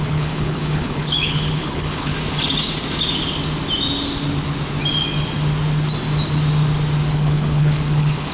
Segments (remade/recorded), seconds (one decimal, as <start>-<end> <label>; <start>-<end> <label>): 0.0-2.1 remade; 2.1-7.1 recorded; 7.1-8.3 remade